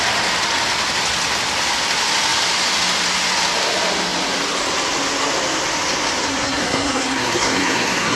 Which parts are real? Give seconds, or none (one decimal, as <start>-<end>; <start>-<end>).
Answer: 0.0-6.2